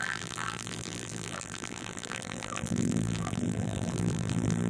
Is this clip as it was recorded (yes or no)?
no